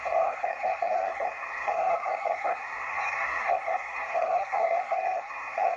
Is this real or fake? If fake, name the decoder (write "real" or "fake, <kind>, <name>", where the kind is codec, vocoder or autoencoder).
fake, codec, SNAC